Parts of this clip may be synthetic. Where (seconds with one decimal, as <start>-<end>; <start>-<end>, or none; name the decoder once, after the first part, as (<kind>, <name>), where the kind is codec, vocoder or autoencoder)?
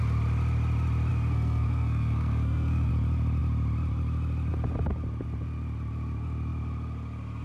1.1-2.9 (codec, SNAC)